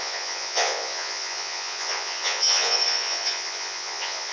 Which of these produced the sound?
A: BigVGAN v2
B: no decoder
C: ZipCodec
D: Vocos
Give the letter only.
D